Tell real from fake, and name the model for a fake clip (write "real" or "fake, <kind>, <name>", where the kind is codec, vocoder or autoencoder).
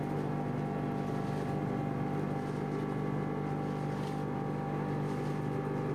real